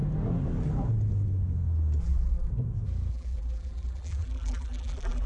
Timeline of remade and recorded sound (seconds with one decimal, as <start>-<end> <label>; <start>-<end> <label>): 0.0-2.0 recorded; 2.0-2.5 remade; 2.5-3.1 recorded; 3.1-5.3 remade